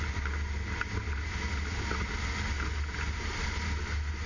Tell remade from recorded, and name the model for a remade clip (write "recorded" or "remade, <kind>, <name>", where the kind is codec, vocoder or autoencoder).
recorded